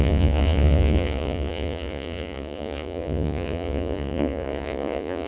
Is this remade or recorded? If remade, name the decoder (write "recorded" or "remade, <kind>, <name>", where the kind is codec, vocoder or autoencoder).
remade, vocoder, Vocos